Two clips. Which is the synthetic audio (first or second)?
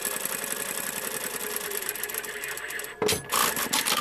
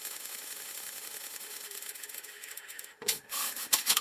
second